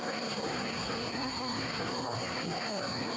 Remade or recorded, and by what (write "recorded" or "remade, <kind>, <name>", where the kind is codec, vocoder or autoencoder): remade, codec, SNAC